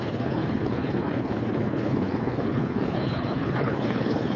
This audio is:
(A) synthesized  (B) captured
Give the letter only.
A